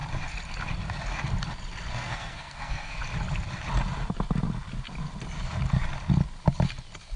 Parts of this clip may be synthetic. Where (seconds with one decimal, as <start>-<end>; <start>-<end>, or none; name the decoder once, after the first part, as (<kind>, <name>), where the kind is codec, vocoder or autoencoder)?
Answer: 1.9-3.0 (codec, SNAC)